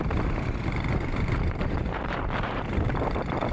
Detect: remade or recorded remade